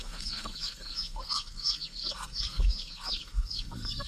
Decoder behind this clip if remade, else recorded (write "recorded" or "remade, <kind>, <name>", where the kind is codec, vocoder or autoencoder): remade, codec, SNAC